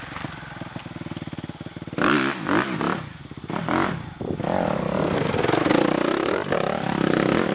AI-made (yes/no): no